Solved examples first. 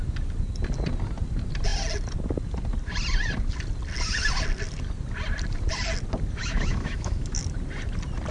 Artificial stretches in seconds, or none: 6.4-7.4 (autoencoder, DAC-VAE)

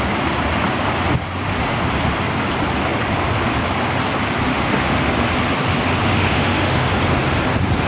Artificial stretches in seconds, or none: 4.5-5.1 (autoencoder, DAC-VAE); 6.1-6.9

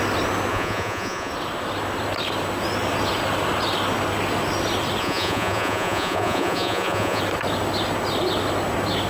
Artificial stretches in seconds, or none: 0.5-1.3 (vocoder, Vocos); 5.0-7.2

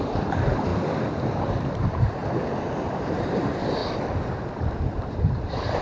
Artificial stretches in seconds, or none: 0.0-0.7 (vocoder, BigVGAN v2); 1.7-2.2; 2.9-3.8; 5.1-5.8

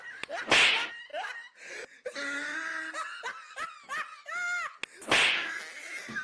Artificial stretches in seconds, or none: none

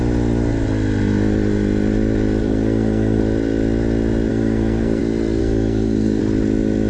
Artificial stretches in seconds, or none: 2.4-3.2 (codec, SNAC); 4.3-5.0; 5.4-6.2

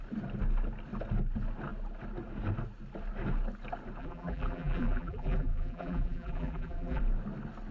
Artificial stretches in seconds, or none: 4.0-7.0 (vocoder, BigVGAN v2)